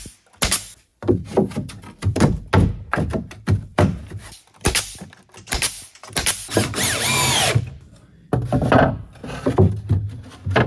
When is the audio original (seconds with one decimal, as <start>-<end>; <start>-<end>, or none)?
0.0-0.9; 2.4-3.7; 7.6-10.7

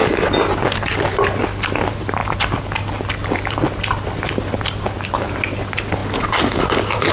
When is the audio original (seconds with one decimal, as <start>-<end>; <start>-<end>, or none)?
0.0-7.1

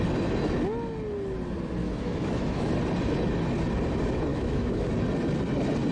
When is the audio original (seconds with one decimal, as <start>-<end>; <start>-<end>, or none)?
0.0-1.8; 2.7-4.3; 4.9-5.9

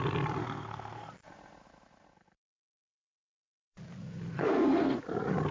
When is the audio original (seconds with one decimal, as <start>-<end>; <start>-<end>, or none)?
0.0-0.4; 1.1-4.3; 5.0-5.5

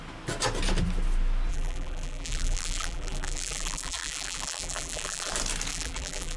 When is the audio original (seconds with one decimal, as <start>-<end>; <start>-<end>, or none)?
0.0-1.5; 5.3-5.7

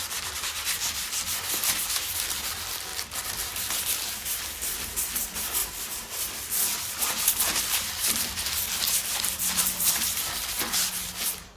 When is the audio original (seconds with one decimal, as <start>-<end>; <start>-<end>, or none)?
0.0-5.6; 10.9-11.6

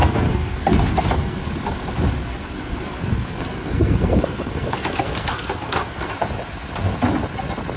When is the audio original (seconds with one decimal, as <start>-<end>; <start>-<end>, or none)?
1.4-2.2; 6.1-7.8